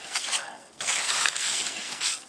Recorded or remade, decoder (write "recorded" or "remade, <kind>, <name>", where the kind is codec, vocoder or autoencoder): remade, codec, SNAC